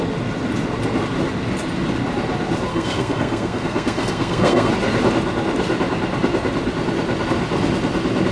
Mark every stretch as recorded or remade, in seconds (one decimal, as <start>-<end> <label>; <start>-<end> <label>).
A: 0.0-2.7 recorded; 2.7-4.7 remade; 4.7-8.3 recorded